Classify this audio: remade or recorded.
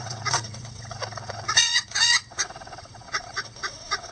remade